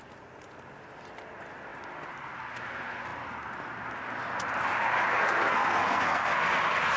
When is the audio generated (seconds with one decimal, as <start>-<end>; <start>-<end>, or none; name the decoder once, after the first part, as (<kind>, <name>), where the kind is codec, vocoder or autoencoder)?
5.1-6.6 (codec, SNAC)

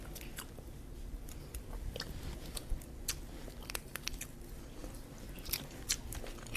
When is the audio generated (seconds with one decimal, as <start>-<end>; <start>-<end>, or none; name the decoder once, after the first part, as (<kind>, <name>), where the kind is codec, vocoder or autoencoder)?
none

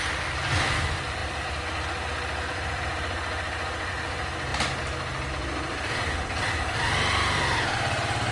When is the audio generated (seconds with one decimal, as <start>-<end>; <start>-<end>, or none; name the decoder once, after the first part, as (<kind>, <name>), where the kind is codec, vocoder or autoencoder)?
none

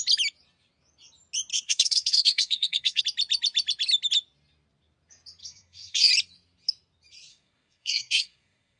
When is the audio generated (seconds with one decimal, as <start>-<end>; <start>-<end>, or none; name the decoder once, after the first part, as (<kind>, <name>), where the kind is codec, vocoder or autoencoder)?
1.5-3.0 (codec, SNAC); 5.4-6.1; 7.3-8.8

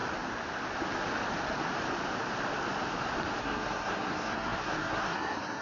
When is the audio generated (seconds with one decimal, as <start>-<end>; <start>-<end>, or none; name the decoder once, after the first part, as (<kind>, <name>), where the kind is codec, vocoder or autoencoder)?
3.4-5.6 (codec, SNAC)